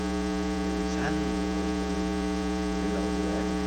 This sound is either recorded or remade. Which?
remade